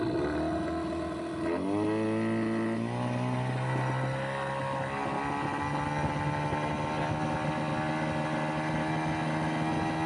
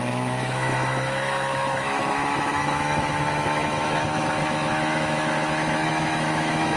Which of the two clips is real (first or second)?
first